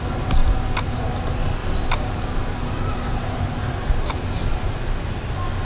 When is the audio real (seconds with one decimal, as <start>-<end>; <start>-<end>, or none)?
0.0-0.4; 1.0-1.6; 4.1-5.6